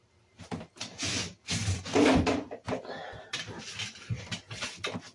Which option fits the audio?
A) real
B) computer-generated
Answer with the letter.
A